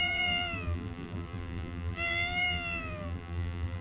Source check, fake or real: fake